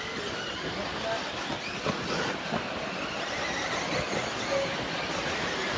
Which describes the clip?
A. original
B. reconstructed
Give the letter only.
A